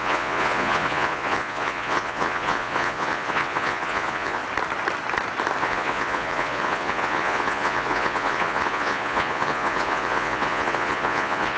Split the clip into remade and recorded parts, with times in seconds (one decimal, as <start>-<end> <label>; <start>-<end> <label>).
0.0-4.4 remade; 4.4-5.6 recorded; 5.6-11.6 remade